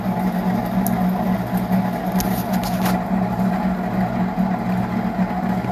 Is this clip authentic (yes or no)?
yes